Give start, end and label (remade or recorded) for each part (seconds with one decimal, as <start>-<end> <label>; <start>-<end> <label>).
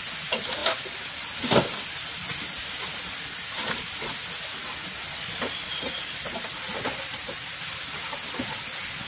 0.0-9.1 recorded